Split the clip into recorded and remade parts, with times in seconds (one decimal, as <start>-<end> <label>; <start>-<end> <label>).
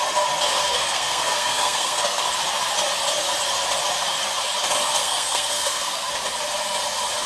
0.0-0.6 recorded; 0.6-2.2 remade; 2.2-5.0 recorded; 5.0-6.1 remade; 6.1-7.3 recorded